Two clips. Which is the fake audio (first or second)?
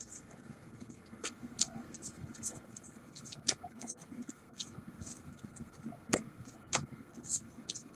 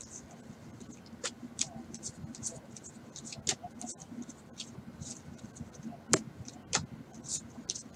first